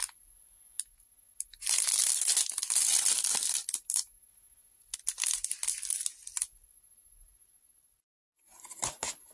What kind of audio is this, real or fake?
real